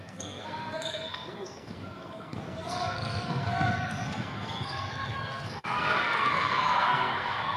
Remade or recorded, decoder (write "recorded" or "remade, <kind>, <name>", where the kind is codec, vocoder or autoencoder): remade, codec, SNAC